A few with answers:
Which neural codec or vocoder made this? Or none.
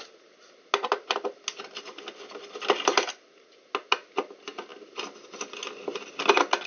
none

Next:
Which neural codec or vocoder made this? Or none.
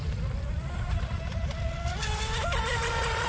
vocoder, BigVGAN v2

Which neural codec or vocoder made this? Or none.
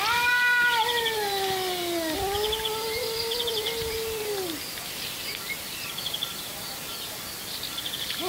vocoder, BigVGAN v2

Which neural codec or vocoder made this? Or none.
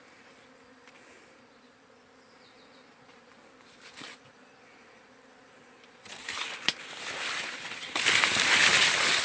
vocoder, BigVGAN v2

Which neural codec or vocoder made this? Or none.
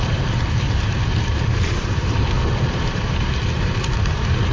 vocoder, BigVGAN v2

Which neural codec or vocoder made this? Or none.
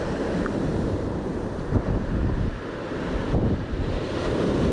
vocoder, BigVGAN v2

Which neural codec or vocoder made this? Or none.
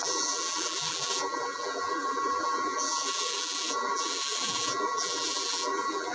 vocoder, BigVGAN v2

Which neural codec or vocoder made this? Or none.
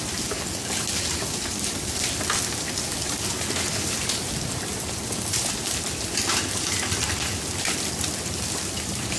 vocoder, BigVGAN v2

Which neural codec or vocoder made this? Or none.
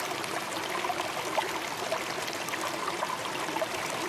vocoder, BigVGAN v2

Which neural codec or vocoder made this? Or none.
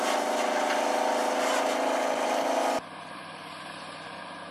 none